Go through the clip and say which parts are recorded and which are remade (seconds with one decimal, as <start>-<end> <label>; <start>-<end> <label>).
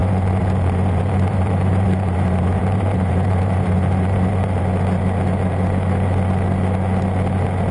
0.0-4.6 remade; 4.6-7.7 recorded